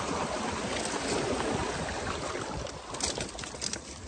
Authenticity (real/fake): real